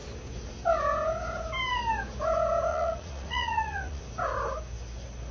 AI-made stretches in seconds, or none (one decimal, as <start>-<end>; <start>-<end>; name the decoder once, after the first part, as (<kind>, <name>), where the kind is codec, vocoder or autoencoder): 2.7-4.0 (vocoder, Vocos)